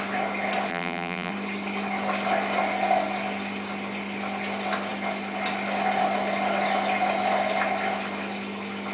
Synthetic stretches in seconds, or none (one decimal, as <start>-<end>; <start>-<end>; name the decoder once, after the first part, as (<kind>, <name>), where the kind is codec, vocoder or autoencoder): 0.7-1.3 (vocoder, BigVGAN v2)